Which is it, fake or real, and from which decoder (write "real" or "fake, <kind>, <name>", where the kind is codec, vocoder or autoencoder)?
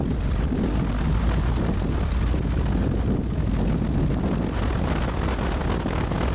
real